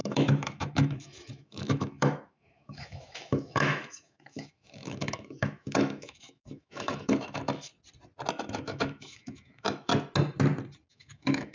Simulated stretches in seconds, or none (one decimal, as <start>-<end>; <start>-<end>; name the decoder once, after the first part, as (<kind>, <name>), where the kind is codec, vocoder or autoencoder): 0.0-7.7 (autoencoder, DAC-VAE); 8.3-9.9; 10.9-11.5